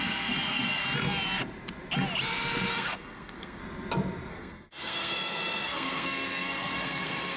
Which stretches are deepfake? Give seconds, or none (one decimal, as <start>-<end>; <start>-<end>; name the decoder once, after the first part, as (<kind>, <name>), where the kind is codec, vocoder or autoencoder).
0.0-0.8 (codec, SNAC); 2.7-3.6; 4.3-7.4